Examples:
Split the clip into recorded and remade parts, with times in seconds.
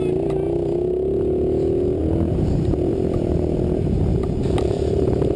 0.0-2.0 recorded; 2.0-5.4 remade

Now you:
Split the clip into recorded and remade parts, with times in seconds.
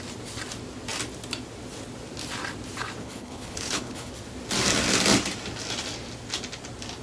0.0-3.0 recorded; 3.0-4.1 remade; 4.1-7.0 recorded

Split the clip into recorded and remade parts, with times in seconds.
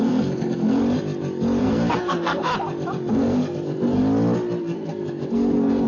0.0-0.8 remade; 0.8-1.6 recorded; 1.6-2.5 remade; 2.5-3.1 recorded; 3.1-4.0 remade; 4.0-4.6 recorded; 4.6-5.9 remade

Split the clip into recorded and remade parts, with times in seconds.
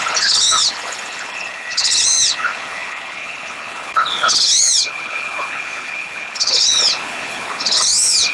0.0-8.3 remade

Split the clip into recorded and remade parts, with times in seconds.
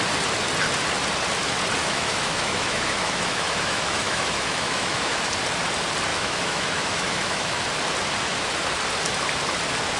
0.0-1.8 recorded; 1.8-5.3 remade; 5.3-6.1 recorded; 6.1-7.6 remade; 7.6-10.0 recorded